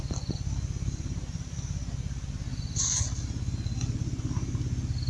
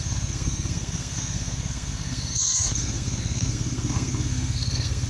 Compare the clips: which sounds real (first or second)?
first